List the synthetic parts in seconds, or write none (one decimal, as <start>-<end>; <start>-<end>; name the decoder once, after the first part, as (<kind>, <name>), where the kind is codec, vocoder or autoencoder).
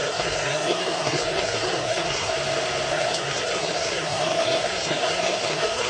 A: 0.0-2.3 (codec, SNAC); 2.9-5.9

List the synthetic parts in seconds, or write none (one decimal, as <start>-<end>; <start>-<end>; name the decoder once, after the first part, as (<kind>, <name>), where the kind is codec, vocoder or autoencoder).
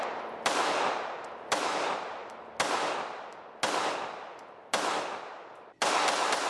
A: 0.0-2.2 (vocoder, BigVGAN v2); 5.2-6.5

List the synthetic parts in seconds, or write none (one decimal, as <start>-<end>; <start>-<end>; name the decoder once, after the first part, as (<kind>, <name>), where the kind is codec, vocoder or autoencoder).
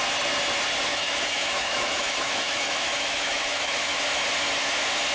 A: 0.9-4.0 (autoencoder, DAC-VAE)